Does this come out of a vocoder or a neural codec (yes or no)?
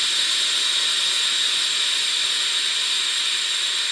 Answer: no